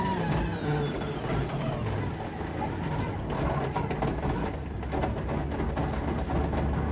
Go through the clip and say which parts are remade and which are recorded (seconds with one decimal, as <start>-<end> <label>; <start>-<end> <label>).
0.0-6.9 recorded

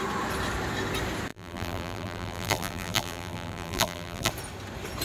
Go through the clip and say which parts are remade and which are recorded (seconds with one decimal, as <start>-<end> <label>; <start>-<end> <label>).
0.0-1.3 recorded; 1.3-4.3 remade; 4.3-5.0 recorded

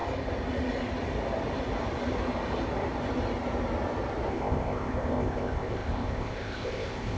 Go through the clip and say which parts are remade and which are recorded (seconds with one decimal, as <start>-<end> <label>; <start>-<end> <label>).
0.0-4.3 recorded; 4.3-7.2 remade

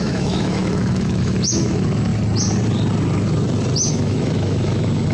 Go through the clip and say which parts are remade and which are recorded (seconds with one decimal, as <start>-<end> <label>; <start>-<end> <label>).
0.0-2.1 remade; 2.1-3.9 recorded; 3.9-5.1 remade